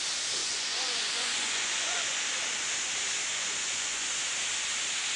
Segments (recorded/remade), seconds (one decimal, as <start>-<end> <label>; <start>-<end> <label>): 0.0-0.4 recorded; 0.4-2.2 remade; 2.2-3.3 recorded; 3.3-4.1 remade; 4.1-5.2 recorded